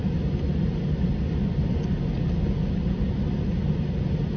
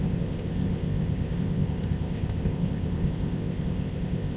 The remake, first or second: second